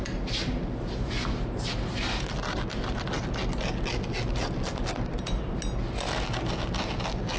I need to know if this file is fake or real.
real